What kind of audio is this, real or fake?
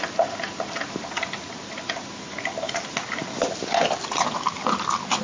real